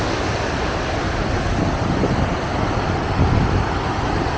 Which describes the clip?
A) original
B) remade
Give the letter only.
A